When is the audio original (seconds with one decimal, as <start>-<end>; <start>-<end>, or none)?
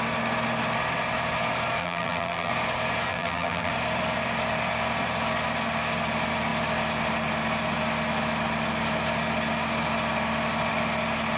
0.0-1.8; 2.5-3.1; 3.7-11.4